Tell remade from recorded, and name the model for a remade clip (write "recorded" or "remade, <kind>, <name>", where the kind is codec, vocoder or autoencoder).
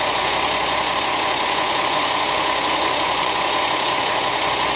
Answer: remade, vocoder, Vocos